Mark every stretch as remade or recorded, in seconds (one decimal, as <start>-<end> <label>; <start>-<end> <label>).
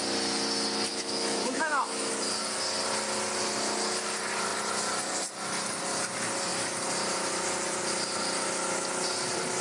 0.0-0.9 recorded; 0.9-2.1 remade; 2.1-9.6 recorded